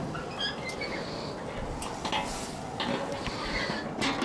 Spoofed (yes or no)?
no